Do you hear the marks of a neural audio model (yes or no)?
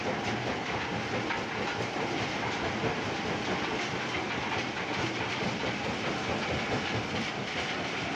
yes